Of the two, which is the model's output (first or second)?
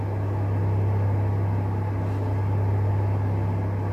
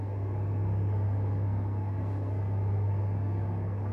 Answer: second